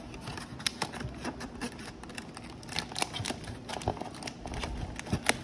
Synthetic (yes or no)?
no